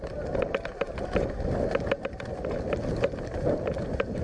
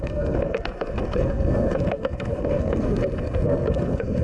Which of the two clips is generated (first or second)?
second